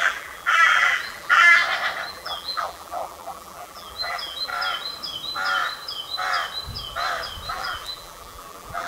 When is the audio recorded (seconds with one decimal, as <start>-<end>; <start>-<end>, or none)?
1.6-2.1; 4.5-7.5